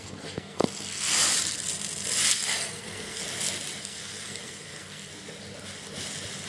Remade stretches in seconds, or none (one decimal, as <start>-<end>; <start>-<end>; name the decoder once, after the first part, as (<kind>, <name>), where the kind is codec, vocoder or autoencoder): 0.0-1.1 (codec, SNAC); 2.3-3.2; 3.8-5.1